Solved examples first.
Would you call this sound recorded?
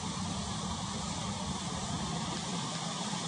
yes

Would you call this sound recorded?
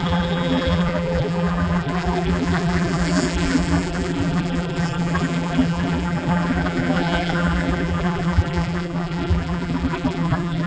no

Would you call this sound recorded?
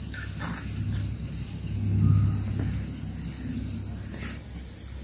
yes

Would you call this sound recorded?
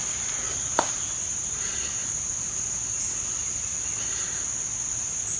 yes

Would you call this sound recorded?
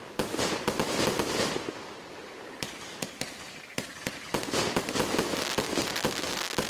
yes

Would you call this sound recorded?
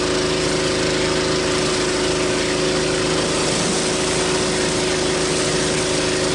yes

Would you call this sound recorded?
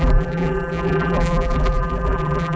no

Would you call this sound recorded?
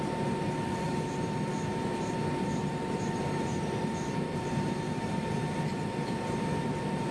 no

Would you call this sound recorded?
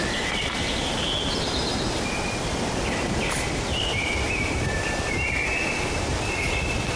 yes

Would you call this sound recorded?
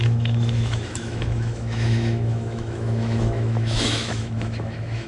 no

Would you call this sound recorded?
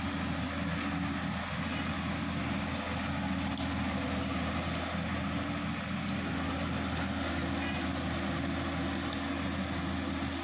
yes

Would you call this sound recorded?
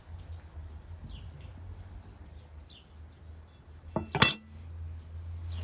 yes